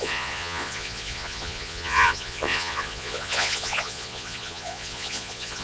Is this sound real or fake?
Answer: fake